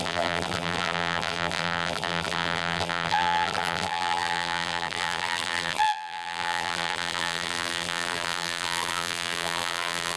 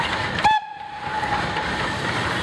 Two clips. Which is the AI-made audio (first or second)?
first